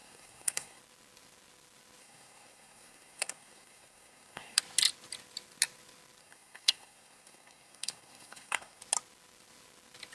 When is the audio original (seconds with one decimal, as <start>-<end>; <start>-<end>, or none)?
0.8-2.0; 4.6-6.2; 8.8-10.1